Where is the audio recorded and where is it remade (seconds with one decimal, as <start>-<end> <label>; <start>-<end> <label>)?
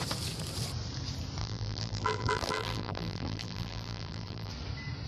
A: 0.0-1.4 recorded; 1.4-4.5 remade; 4.5-5.1 recorded